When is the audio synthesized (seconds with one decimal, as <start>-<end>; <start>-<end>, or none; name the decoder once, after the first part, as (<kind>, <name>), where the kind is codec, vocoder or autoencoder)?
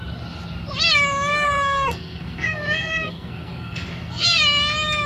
1.3-4.4 (codec, SNAC)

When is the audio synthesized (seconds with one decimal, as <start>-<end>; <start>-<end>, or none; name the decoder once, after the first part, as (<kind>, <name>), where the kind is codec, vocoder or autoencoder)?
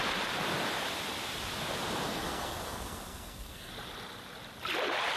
2.1-3.7 (codec, SNAC)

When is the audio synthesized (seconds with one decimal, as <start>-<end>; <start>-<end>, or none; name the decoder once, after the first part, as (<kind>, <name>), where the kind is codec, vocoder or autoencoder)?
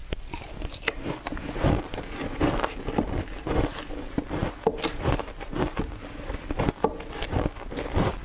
none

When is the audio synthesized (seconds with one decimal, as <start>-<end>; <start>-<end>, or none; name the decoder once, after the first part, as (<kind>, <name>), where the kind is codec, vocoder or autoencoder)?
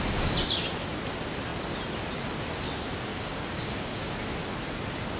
3.1-4.1 (codec, DAC)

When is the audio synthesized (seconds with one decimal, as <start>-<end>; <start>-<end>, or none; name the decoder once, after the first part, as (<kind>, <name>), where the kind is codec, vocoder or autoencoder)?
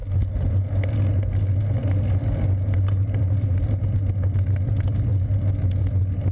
none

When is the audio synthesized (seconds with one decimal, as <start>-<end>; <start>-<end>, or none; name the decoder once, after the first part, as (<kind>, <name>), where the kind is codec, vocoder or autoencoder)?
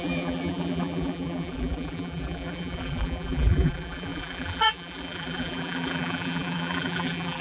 0.0-7.4 (vocoder, BigVGAN v2)